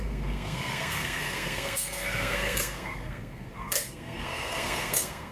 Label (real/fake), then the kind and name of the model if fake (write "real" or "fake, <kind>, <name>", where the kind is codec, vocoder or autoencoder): fake, codec, SNAC